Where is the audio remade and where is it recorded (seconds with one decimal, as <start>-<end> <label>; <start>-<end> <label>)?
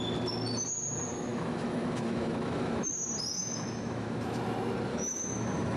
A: 0.0-1.3 recorded; 1.3-2.9 remade; 2.9-3.3 recorded; 3.3-4.4 remade; 4.4-4.9 recorded; 4.9-5.8 remade